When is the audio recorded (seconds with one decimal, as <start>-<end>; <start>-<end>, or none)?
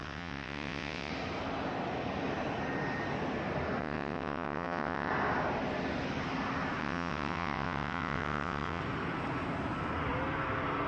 1.1-3.8; 5.1-6.8; 8.8-10.9